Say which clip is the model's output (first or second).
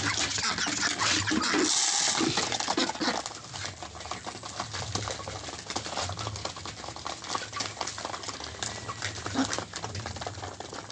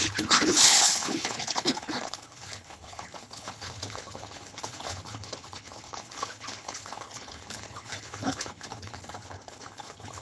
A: second